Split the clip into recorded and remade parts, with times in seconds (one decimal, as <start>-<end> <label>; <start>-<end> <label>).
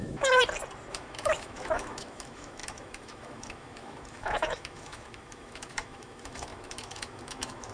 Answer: 0.0-0.4 remade; 0.4-0.9 recorded; 0.9-7.7 remade